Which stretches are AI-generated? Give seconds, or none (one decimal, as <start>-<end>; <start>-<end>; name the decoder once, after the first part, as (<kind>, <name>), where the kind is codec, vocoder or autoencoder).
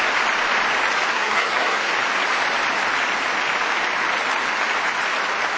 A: 1.1-1.9 (codec, SNAC)